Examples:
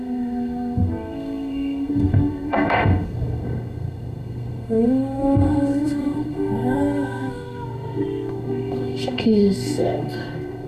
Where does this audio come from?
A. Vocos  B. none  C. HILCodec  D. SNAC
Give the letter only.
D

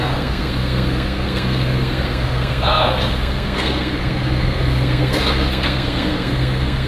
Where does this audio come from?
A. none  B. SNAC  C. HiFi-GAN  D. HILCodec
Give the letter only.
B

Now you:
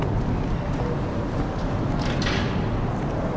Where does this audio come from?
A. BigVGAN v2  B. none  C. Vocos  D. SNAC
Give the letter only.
B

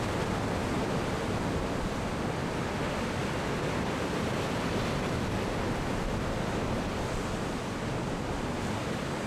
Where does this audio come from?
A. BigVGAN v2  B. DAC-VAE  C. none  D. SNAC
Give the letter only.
C